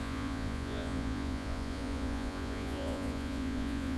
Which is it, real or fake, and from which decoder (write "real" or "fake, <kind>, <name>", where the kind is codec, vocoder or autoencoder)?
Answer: fake, vocoder, Vocos